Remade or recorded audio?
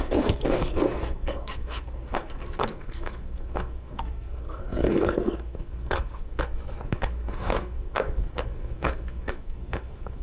remade